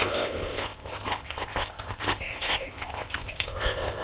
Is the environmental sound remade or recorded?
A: remade